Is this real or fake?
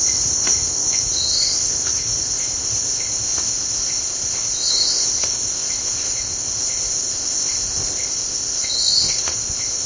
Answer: fake